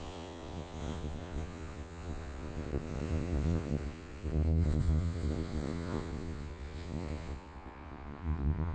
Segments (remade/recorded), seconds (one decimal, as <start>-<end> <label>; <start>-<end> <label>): 0.0-8.7 remade